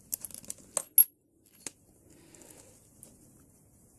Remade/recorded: recorded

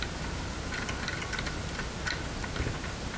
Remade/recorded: recorded